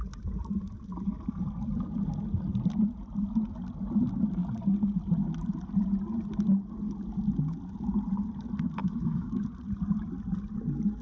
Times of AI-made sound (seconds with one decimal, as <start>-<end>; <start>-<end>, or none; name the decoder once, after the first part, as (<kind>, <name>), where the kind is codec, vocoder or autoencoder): 8.8-9.4 (autoencoder, DAC-VAE)